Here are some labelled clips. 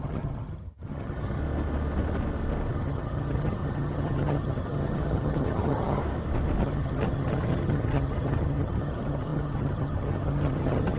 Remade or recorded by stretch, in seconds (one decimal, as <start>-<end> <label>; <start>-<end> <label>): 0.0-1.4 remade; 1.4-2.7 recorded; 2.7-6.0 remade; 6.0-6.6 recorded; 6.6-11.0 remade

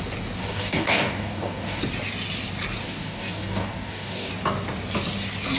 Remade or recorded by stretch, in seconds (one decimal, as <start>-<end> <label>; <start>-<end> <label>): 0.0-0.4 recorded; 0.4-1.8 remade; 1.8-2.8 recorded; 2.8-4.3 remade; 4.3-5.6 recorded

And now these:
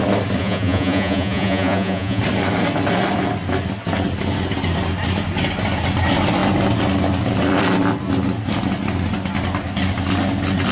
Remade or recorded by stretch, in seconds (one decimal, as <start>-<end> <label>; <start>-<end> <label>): 0.0-0.4 recorded; 0.4-2.2 remade; 2.2-10.7 recorded

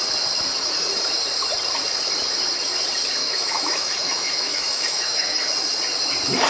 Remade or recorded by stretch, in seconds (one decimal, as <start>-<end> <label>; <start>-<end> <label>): 0.0-3.2 recorded; 3.2-5.4 remade; 5.4-6.5 recorded

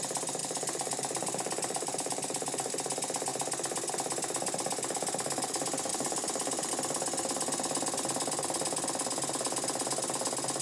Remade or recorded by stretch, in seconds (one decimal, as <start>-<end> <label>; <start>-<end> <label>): 0.0-0.4 recorded; 0.4-2.7 remade; 2.7-5.9 recorded; 5.9-6.7 remade; 6.7-10.6 recorded

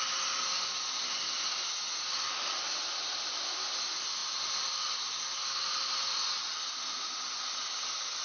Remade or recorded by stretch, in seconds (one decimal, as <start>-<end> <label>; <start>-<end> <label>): 0.0-8.2 recorded